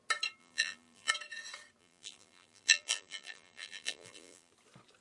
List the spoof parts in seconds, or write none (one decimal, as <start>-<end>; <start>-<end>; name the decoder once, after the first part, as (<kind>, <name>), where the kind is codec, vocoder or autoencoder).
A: 0.4-1.1 (vocoder, BigVGAN v2); 1.8-4.5